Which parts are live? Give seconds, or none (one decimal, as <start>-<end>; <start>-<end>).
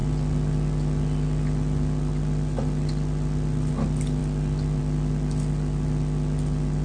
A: 0.0-6.8